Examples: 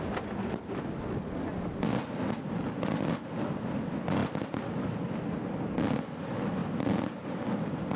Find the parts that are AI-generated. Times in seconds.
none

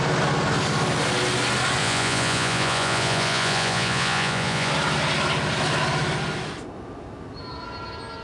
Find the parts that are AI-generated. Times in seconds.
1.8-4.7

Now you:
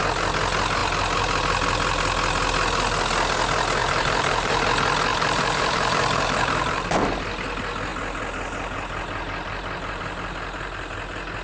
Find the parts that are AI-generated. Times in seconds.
3.8-4.6; 5.1-7.0

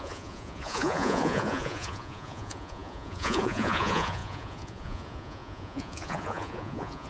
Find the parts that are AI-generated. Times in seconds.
0.0-7.1

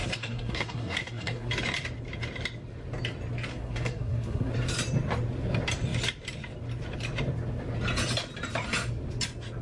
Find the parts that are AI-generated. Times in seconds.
0.0-1.5; 3.5-4.5

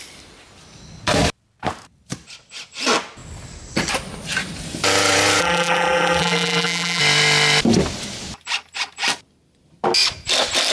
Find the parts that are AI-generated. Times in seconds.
5.4-7.0

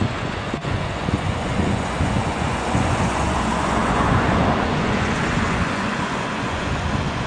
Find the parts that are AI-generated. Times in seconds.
0.0-7.3